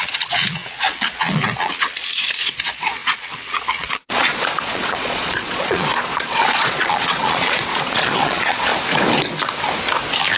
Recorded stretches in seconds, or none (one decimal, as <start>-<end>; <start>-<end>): 8.7-10.4